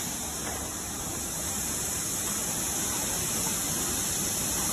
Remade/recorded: recorded